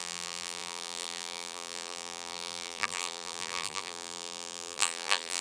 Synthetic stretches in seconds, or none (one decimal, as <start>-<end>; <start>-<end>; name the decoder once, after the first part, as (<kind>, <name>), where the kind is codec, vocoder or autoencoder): 0.0-5.4 (vocoder, BigVGAN v2)